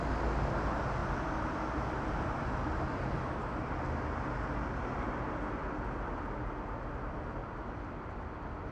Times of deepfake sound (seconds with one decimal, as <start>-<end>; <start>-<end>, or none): 1.0-3.7; 7.4-8.2